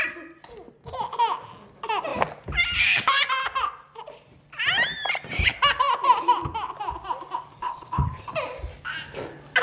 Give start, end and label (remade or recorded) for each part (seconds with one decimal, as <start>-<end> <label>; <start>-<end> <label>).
0.0-7.5 recorded; 7.5-8.1 remade; 8.1-9.6 recorded

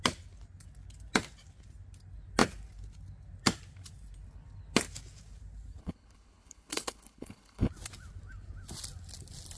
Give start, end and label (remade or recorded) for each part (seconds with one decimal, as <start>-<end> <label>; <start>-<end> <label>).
0.0-5.8 recorded; 5.8-7.7 remade; 7.7-9.6 recorded

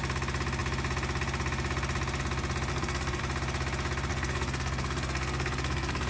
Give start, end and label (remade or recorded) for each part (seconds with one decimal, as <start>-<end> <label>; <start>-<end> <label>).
0.0-2.7 recorded; 2.7-3.2 remade; 3.2-4.1 recorded; 4.1-6.1 remade

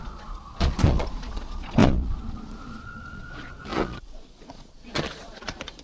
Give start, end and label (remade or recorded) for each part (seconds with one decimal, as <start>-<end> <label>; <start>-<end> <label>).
0.0-5.8 remade

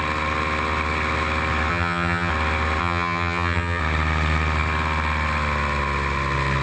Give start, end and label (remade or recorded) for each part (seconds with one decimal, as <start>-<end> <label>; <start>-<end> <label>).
0.0-1.7 recorded; 1.7-2.3 remade; 2.3-2.8 recorded; 2.8-3.8 remade; 3.8-6.6 recorded

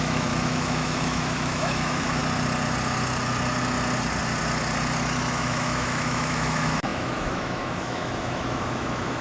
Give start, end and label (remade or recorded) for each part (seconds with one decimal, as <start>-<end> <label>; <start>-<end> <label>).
0.0-2.2 remade; 2.2-5.3 recorded; 5.3-9.2 remade